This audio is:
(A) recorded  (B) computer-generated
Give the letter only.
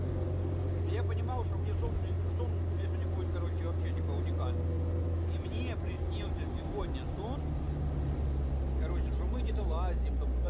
A